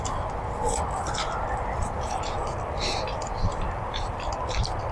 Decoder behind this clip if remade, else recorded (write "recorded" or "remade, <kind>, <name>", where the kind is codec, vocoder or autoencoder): remade, vocoder, BigVGAN v2